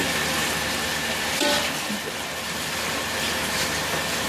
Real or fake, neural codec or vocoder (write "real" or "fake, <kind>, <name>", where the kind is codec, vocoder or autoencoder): real